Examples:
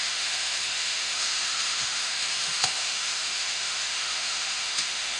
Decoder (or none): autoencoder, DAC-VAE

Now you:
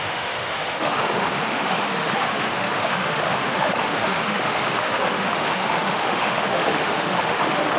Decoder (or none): autoencoder, DAC-VAE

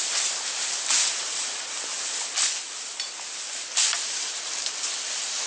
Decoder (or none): none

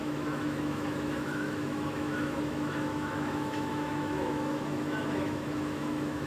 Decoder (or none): autoencoder, DAC-VAE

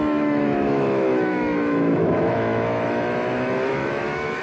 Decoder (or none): autoencoder, DAC-VAE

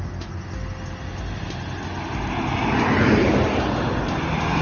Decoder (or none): none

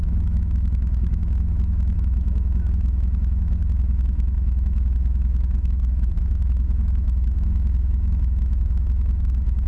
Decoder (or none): autoencoder, DAC-VAE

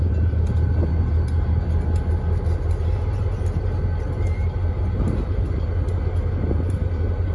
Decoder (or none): none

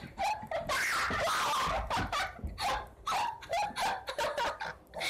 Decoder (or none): none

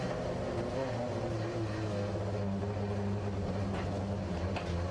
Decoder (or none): none